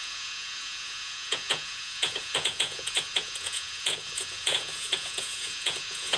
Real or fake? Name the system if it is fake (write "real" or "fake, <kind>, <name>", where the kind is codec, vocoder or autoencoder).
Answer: fake, vocoder, Vocos